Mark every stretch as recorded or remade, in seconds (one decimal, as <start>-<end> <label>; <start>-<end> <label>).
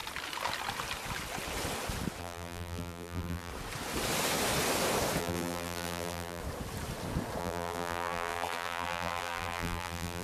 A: 0.0-2.2 recorded; 2.2-3.5 remade; 3.5-5.2 recorded; 5.2-6.4 remade; 6.4-7.4 recorded; 7.4-10.2 remade